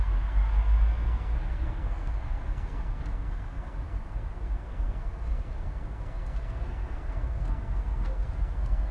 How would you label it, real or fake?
fake